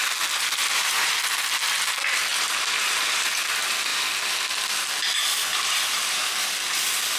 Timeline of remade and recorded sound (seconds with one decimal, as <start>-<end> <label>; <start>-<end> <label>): 0.0-0.6 recorded; 0.6-1.2 remade; 1.2-2.3 recorded; 2.3-3.3 remade; 3.3-5.5 recorded; 5.5-6.3 remade; 6.3-7.2 recorded